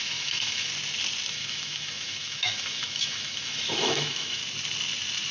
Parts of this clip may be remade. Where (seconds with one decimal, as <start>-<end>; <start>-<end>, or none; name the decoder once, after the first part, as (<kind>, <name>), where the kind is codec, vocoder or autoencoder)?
0.0-0.7 (autoencoder, DAC-VAE); 1.3-4.4